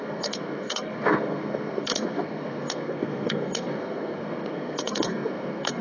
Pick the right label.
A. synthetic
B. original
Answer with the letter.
A